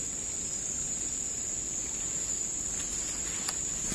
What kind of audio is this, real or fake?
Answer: real